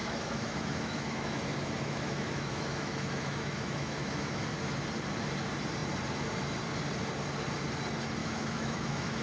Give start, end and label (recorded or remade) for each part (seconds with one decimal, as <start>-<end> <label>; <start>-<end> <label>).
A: 0.0-4.4 remade; 4.4-8.2 recorded; 8.2-9.2 remade